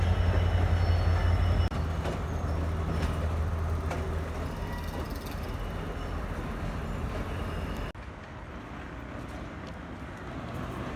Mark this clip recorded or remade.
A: recorded